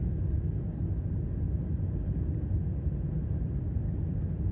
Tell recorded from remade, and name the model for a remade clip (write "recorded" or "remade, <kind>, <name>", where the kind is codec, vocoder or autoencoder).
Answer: recorded